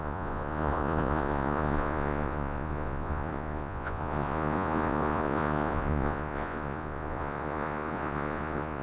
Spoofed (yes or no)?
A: yes